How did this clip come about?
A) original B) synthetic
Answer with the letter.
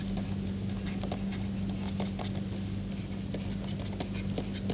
A